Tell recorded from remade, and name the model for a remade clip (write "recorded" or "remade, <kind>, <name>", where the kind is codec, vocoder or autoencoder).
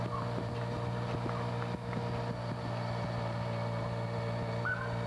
recorded